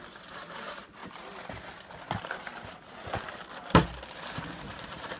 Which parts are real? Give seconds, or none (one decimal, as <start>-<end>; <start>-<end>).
1.0-4.1